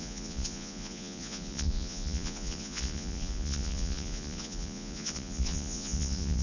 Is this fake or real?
fake